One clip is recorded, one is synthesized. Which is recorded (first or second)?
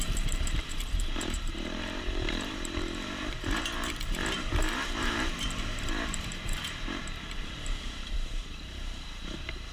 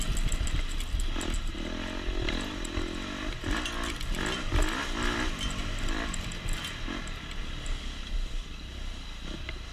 second